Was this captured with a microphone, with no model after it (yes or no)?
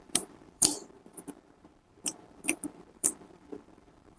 no